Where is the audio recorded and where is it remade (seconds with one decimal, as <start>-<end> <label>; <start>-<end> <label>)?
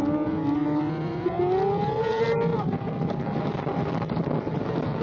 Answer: 0.0-5.0 recorded